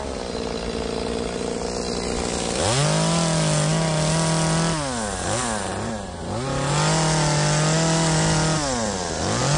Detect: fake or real real